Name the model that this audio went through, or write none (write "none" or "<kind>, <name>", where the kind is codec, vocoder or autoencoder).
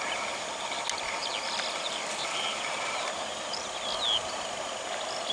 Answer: none